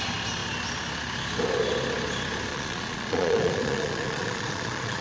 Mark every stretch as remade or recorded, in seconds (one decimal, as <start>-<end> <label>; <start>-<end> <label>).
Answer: 0.0-2.5 recorded; 2.5-5.0 remade